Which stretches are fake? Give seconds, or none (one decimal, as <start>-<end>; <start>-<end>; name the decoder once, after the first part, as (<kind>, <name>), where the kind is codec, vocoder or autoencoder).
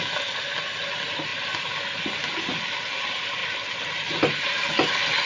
none